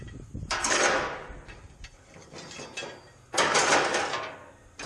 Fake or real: fake